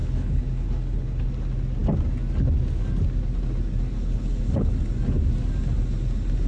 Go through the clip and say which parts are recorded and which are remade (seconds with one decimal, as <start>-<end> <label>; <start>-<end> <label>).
0.0-1.3 remade; 1.3-6.5 recorded